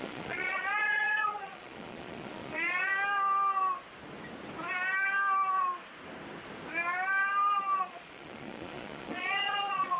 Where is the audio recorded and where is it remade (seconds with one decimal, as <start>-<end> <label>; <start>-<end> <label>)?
0.0-2.9 remade; 2.9-7.8 recorded; 7.8-10.0 remade